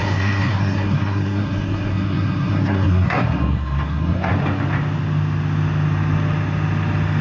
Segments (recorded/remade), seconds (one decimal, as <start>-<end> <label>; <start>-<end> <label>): 0.0-4.3 remade; 4.3-7.2 recorded